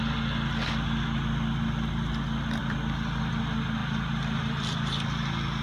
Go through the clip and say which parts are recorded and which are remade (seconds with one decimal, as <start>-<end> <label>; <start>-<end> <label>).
0.0-2.6 recorded; 2.6-3.2 remade; 3.2-3.8 recorded; 3.8-4.6 remade; 4.6-5.6 recorded